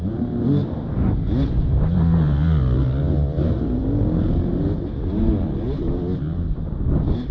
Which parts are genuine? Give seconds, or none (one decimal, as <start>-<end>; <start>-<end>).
0.0-7.3